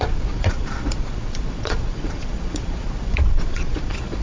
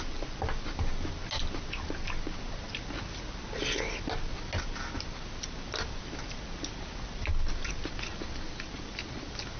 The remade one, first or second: first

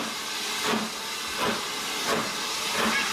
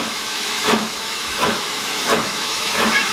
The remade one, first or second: second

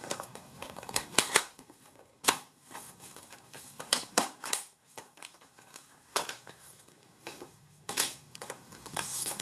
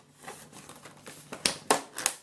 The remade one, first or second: first